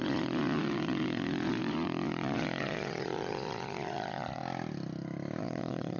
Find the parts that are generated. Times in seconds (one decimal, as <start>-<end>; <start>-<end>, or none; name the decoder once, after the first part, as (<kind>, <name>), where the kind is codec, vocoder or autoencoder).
0.0-4.4 (vocoder, Vocos); 5.4-6.0